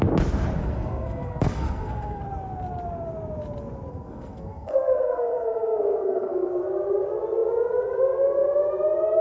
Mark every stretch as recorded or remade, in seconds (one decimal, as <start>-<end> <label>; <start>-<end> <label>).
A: 0.0-0.6 recorded; 0.6-2.2 remade; 2.2-3.9 recorded; 3.9-6.5 remade; 6.5-9.2 recorded